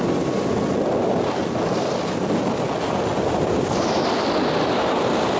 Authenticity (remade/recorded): recorded